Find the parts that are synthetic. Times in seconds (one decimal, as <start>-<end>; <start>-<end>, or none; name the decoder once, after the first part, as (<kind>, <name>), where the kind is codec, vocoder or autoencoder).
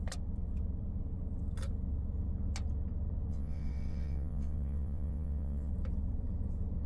3.3-5.7 (vocoder, WaveNeXt)